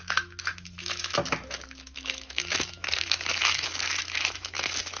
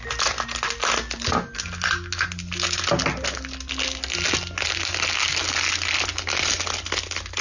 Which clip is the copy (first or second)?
first